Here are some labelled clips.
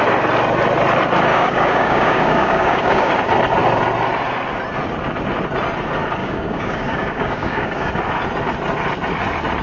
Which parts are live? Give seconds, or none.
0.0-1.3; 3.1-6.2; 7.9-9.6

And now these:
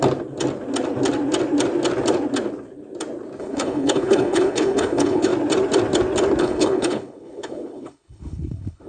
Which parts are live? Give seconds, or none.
0.0-3.4; 5.3-6.4